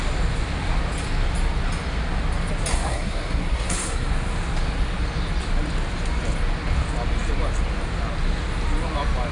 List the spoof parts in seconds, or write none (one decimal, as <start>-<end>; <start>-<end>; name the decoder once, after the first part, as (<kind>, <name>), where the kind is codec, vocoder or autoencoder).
2.7-4.1 (codec, SNAC)

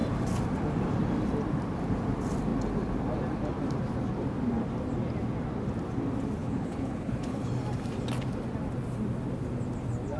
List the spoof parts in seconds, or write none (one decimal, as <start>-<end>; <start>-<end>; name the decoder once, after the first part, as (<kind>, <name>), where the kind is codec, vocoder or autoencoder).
6.4-7.5 (codec, HILCodec)

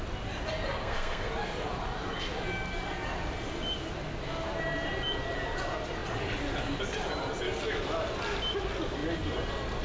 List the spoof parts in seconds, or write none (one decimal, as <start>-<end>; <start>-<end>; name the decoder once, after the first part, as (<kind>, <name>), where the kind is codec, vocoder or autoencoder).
0.8-1.3 (codec, SNAC)

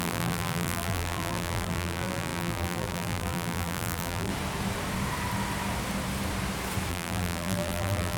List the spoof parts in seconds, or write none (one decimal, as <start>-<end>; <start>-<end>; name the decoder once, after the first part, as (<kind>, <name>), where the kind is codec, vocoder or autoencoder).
0.0-4.3 (vocoder, BigVGAN v2); 6.9-8.2